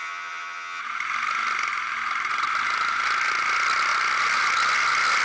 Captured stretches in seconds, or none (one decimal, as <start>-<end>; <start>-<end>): 0.8-5.2